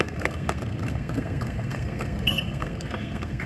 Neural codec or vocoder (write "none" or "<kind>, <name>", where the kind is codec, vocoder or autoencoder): codec, SNAC